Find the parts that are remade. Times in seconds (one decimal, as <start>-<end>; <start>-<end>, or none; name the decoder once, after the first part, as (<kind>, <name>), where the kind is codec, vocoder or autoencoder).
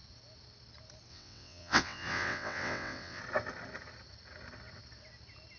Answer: 1.1-3.2 (vocoder, WaveNeXt)